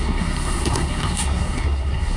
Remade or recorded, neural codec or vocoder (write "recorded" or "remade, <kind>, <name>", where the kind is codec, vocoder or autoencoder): remade, codec, SNAC